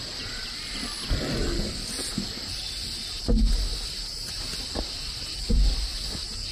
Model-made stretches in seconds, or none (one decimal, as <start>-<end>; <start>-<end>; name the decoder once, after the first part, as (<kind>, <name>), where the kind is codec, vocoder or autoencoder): none